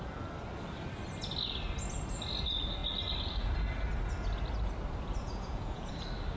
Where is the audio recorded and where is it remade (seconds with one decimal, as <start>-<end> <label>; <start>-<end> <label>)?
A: 0.0-5.2 recorded; 5.2-5.9 remade; 5.9-6.4 recorded